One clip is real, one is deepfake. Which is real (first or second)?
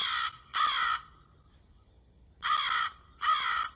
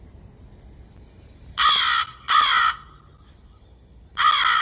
second